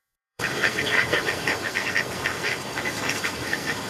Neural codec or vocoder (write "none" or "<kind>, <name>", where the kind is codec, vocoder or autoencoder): codec, SNAC